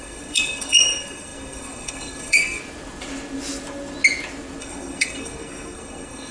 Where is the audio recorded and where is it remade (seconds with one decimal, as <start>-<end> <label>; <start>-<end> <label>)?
0.0-2.6 remade; 2.6-4.6 recorded; 4.6-6.3 remade